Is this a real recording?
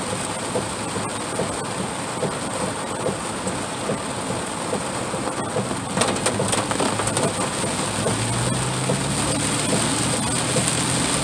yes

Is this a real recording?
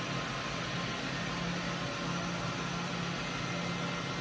yes